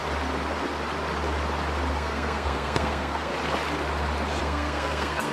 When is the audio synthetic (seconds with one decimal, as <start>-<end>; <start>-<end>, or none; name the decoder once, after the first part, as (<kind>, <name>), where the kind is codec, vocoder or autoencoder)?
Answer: 1.9-3.3 (codec, SNAC); 4.4-5.3